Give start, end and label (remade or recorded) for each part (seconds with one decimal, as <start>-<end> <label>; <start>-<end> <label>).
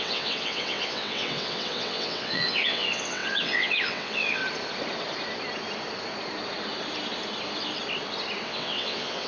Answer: 0.0-4.4 remade; 4.4-8.4 recorded; 8.4-9.3 remade